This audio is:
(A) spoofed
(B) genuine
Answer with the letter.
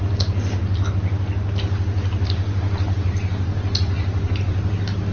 B